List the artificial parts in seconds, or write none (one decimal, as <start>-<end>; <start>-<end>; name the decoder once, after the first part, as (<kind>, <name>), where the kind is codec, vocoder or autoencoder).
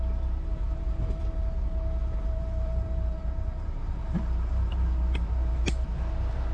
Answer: 0.5-1.2 (vocoder, BigVGAN v2); 2.0-5.9